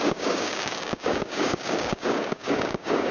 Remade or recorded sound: remade